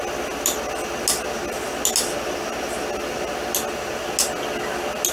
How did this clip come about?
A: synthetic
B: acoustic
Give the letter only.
B